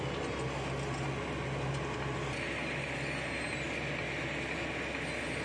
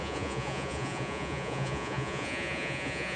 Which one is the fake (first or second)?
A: second